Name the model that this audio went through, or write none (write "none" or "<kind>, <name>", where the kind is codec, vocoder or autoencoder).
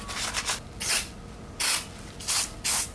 none